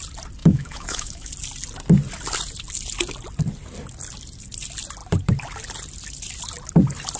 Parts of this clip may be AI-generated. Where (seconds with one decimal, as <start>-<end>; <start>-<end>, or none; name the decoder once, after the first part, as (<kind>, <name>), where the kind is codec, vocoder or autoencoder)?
0.4-1.3 (autoencoder, DAC-VAE)